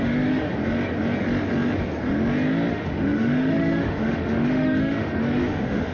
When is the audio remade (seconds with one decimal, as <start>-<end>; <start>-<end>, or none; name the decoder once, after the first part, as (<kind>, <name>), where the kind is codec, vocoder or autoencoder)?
0.0-0.5 (autoencoder, DAC-VAE); 2.7-5.9